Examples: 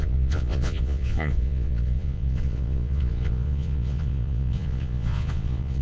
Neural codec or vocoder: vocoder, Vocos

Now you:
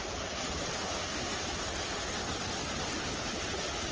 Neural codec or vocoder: none